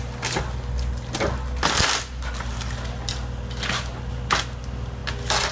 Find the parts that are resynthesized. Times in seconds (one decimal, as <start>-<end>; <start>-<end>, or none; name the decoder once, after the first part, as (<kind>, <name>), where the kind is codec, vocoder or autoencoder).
none